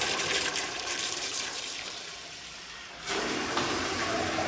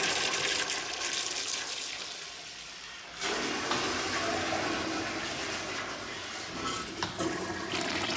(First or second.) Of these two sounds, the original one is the second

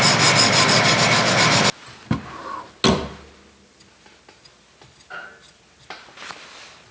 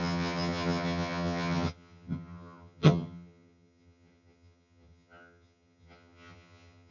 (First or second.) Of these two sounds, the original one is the first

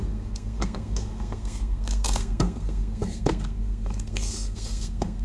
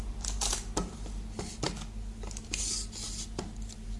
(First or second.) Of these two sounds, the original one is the second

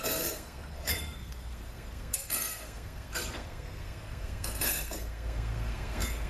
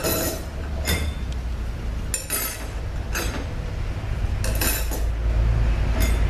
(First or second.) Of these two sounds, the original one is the second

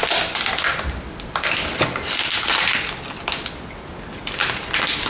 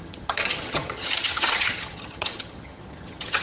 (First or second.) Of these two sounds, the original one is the first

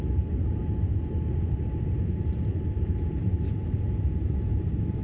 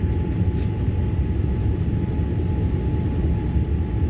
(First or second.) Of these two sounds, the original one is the second